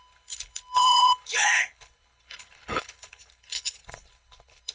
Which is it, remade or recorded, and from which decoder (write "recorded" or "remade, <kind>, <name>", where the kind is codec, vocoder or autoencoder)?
remade, codec, HILCodec